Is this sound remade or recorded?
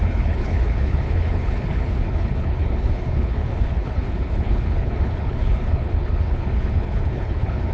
remade